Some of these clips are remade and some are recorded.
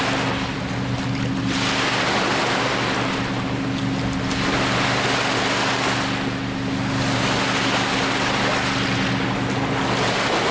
recorded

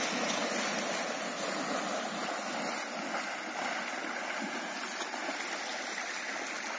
recorded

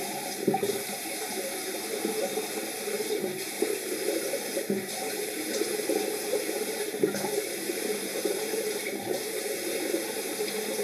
remade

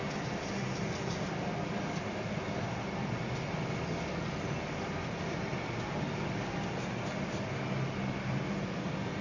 recorded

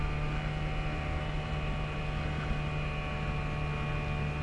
recorded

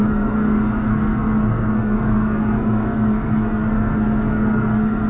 remade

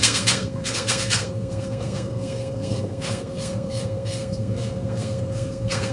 remade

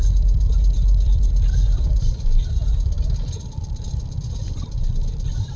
recorded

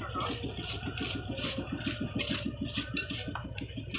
recorded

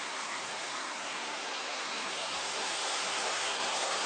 remade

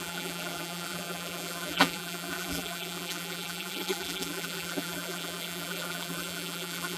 remade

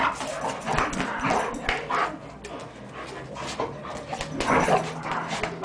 recorded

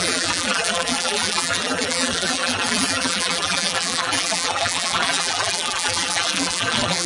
remade